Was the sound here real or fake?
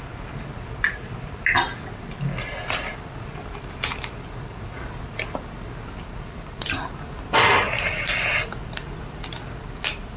real